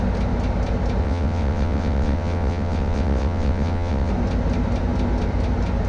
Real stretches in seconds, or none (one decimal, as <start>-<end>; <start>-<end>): 0.0-1.0; 4.1-5.9